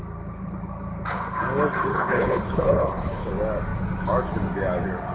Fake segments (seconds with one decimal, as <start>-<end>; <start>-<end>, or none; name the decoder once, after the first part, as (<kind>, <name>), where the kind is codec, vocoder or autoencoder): 1.9-3.3 (codec, HILCodec)